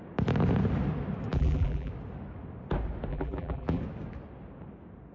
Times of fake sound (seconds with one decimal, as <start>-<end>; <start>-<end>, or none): 1.3-1.9; 3.1-3.8